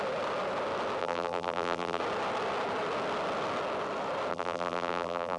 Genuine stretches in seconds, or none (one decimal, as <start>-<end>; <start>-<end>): 0.0-1.0; 2.0-4.3